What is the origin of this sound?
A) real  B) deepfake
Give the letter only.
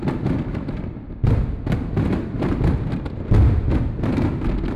A